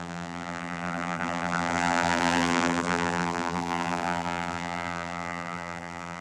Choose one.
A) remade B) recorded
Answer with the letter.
A